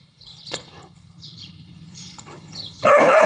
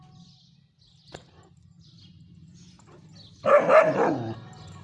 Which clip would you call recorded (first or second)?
second